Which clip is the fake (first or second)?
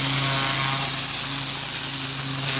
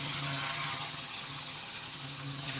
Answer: second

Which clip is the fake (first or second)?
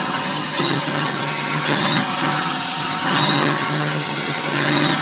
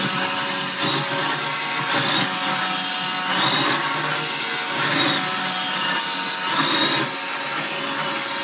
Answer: first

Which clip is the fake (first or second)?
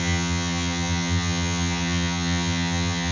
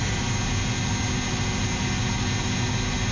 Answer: first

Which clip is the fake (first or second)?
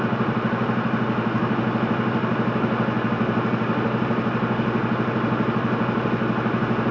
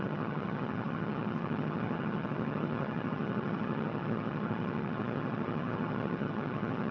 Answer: second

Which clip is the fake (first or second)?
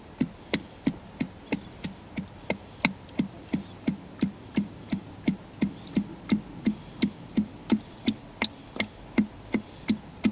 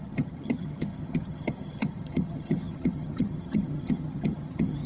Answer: second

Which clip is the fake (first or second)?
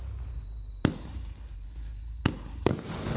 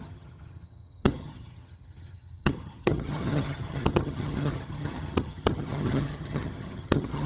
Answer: second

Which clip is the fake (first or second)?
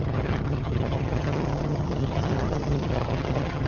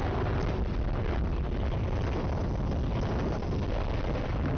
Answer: first